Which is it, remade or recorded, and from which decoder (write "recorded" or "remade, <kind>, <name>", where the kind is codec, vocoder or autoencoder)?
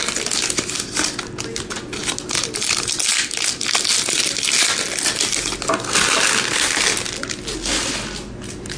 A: recorded